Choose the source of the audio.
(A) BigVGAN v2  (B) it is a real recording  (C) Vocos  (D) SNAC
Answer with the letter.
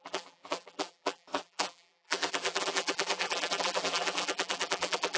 A